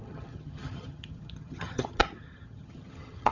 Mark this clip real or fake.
fake